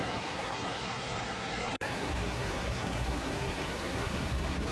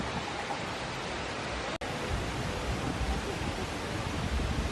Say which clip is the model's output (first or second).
first